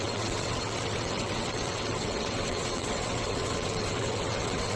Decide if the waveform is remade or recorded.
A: remade